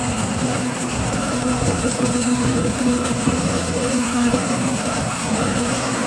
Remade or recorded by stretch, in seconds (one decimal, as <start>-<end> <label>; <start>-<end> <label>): 0.0-6.1 remade